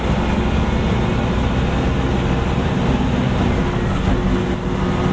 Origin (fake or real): real